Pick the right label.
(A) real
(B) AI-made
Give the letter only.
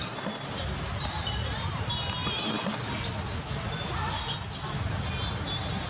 A